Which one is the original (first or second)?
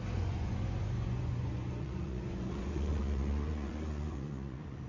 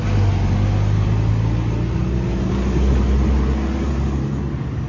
second